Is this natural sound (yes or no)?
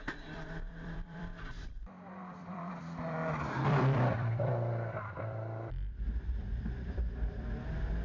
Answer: no